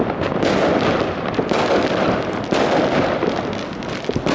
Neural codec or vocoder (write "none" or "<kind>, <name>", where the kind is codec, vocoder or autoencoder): none